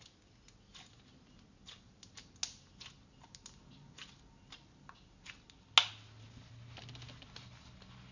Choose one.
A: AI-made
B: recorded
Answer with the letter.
B